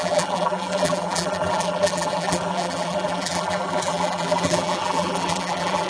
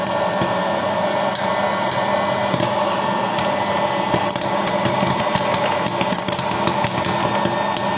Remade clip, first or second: first